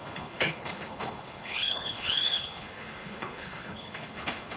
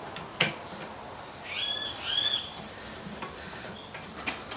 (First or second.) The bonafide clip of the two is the second